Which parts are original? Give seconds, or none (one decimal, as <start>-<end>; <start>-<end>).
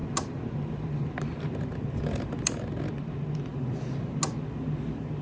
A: 0.0-5.2